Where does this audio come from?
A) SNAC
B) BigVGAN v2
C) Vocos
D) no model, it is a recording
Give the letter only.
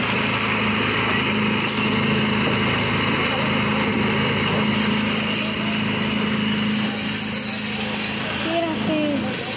D